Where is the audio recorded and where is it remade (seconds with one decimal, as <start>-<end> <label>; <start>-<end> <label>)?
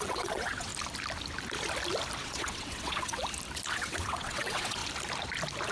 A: 0.0-0.7 remade; 0.7-2.2 recorded; 2.2-3.2 remade; 3.2-3.7 recorded; 3.7-4.8 remade; 4.8-5.7 recorded